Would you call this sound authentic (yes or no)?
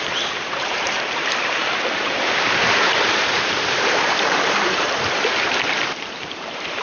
no